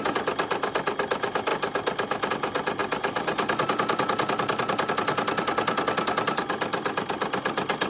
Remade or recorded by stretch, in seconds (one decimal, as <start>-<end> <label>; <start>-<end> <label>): 0.0-7.9 recorded